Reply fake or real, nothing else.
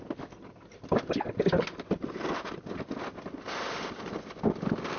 real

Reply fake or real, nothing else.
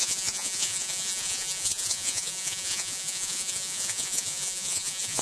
fake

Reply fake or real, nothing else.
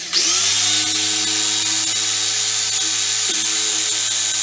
real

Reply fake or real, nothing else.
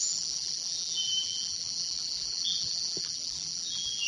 fake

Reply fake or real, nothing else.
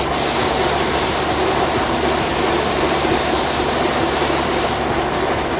fake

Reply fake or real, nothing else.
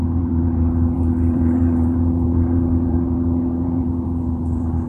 fake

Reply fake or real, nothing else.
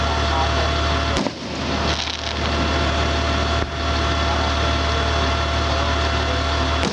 real